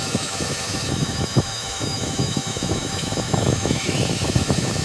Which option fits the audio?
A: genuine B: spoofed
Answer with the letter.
B